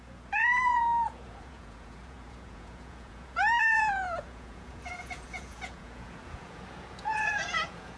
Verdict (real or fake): fake